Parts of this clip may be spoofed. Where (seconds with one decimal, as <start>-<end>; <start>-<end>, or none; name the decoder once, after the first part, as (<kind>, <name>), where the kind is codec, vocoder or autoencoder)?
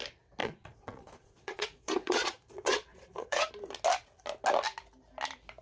0.4-3.5 (vocoder, Vocos)